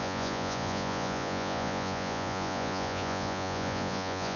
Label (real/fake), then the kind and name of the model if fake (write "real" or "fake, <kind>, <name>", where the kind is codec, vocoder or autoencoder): fake, vocoder, Vocos